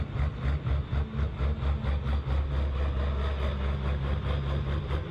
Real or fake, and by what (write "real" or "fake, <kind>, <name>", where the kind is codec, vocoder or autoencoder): real